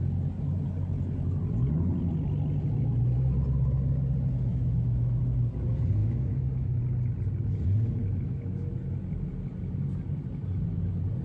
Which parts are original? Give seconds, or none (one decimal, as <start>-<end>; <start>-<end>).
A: 0.0-4.5; 5.2-6.0; 6.8-8.0; 8.8-11.2